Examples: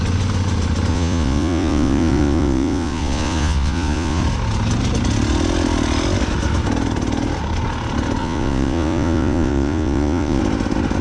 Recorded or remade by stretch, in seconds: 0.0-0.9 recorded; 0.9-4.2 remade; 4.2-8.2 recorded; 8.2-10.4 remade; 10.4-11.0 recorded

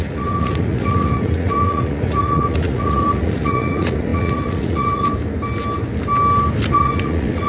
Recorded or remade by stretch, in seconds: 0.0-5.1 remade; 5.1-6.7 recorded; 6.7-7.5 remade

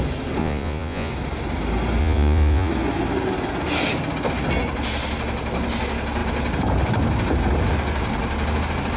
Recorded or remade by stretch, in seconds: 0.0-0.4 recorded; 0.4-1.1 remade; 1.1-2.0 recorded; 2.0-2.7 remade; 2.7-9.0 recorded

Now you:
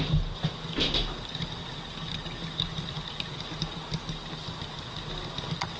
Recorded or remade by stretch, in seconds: 0.0-5.8 recorded

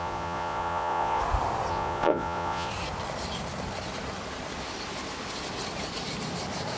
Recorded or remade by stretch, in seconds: 0.0-1.2 remade; 1.2-1.7 recorded; 1.7-2.7 remade; 2.7-6.8 recorded